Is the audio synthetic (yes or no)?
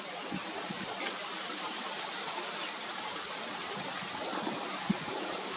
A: no